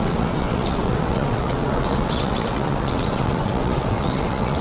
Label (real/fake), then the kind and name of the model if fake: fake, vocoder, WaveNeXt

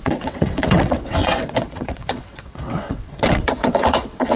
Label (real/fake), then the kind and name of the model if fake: fake, vocoder, WaveNeXt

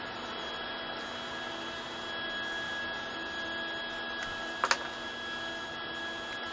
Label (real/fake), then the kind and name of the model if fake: real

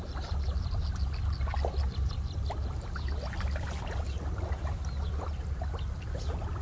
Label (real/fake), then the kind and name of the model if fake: real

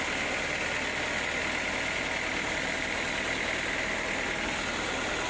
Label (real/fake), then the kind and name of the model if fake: real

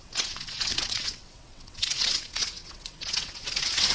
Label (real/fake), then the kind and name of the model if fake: fake, vocoder, WaveNeXt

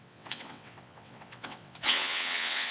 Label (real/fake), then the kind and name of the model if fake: fake, vocoder, WaveNeXt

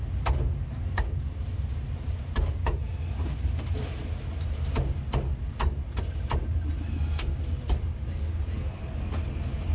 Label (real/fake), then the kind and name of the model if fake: real